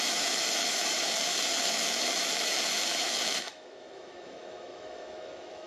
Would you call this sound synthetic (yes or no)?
yes